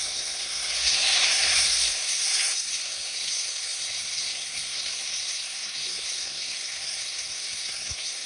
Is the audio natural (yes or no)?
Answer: no